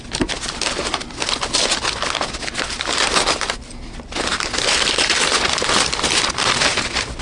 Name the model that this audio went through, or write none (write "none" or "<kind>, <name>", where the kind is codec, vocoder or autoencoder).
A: none